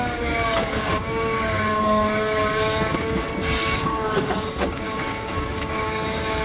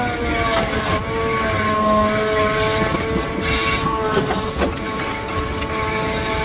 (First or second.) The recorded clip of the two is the second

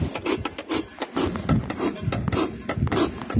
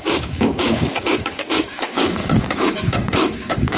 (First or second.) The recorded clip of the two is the first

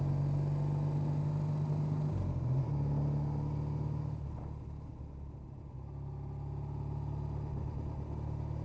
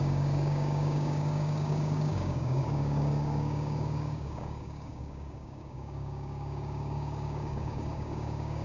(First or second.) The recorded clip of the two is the first